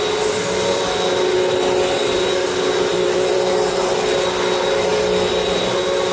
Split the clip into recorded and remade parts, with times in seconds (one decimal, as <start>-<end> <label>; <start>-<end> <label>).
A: 0.0-2.9 recorded; 2.9-3.5 remade; 3.5-6.1 recorded